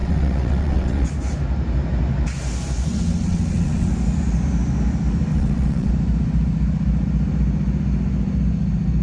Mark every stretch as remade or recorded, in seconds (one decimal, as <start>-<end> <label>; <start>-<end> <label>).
0.0-1.1 remade; 1.1-2.9 recorded; 2.9-3.9 remade; 3.9-5.3 recorded; 5.3-5.9 remade; 5.9-9.0 recorded

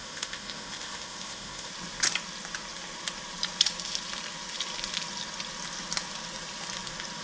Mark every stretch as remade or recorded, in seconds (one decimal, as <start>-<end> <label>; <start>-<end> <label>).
0.0-1.7 remade; 1.7-7.2 recorded

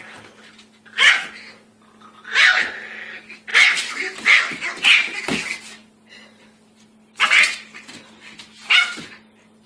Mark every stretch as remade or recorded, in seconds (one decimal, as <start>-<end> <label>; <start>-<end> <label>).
0.0-9.7 recorded

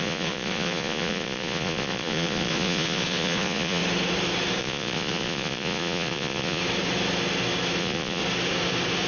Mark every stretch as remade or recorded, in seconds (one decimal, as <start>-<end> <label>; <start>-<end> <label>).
0.0-3.8 remade; 3.8-4.6 recorded; 4.6-6.6 remade; 6.6-7.8 recorded; 7.8-8.2 remade; 8.2-9.1 recorded

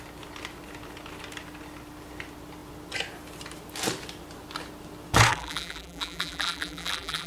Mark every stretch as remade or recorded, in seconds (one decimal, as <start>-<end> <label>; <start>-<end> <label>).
0.0-5.3 recorded; 5.3-7.3 remade

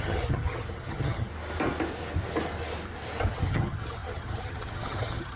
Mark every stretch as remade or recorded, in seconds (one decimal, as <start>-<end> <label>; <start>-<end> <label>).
0.0-1.3 remade; 1.3-3.3 recorded; 3.3-5.4 remade

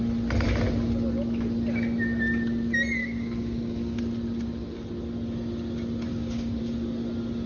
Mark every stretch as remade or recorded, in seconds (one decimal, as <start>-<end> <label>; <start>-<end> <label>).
0.0-3.0 recorded; 3.0-4.0 remade; 4.0-6.1 recorded; 6.1-6.6 remade; 6.6-7.5 recorded